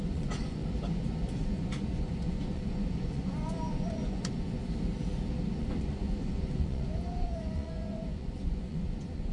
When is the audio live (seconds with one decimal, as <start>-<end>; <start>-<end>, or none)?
0.6-1.4; 4.6-5.6